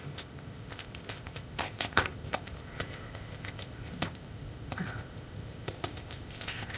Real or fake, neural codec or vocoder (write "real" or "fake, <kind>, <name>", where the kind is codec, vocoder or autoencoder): fake, codec, ZipCodec